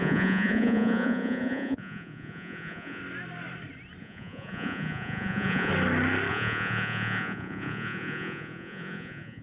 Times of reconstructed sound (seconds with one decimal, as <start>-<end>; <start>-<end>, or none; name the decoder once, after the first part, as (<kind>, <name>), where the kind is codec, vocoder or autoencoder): 0.0-3.0 (vocoder, Vocos); 4.0-5.7; 6.3-9.4

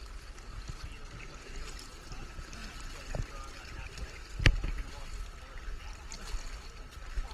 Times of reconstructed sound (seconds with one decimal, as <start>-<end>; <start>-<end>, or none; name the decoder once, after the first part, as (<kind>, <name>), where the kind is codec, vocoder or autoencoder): none

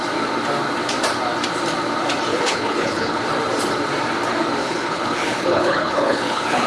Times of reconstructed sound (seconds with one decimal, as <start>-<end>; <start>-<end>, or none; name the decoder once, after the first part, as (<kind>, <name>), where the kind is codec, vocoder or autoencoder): 2.3-3.2 (codec, HILCodec); 4.6-6.7